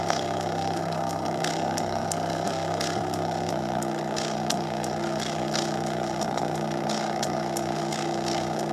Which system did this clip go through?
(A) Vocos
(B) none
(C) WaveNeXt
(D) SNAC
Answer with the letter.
D